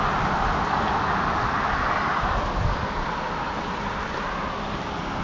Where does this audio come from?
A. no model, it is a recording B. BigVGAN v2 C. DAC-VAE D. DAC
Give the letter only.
A